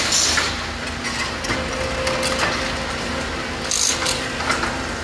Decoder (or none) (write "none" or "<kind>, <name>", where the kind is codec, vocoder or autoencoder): none